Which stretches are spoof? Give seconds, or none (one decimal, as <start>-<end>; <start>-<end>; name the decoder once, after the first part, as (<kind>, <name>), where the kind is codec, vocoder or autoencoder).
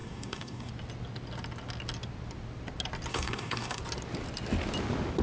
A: 0.0-0.7 (codec, DAC); 3.1-3.8